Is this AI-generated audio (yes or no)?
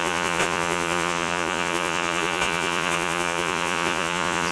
yes